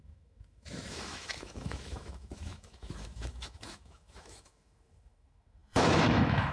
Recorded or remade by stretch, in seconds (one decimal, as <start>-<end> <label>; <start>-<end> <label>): 0.0-6.5 remade